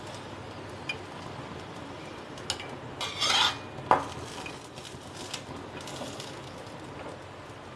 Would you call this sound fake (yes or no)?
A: no